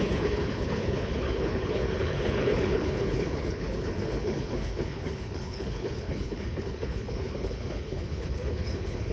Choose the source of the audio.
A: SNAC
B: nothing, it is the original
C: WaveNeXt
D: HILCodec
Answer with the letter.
D